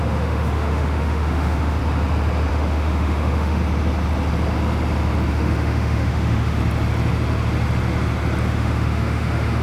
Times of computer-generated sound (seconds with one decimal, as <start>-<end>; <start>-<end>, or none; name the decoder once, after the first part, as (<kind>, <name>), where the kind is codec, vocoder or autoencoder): 0.0-1.8 (autoencoder, DAC-VAE); 2.5-3.6; 5.3-6.6; 8.5-9.6